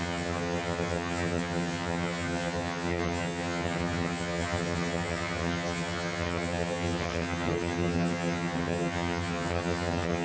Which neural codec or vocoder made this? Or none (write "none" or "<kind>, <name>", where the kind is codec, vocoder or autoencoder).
vocoder, HiFi-GAN